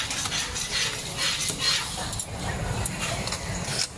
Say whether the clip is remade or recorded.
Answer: recorded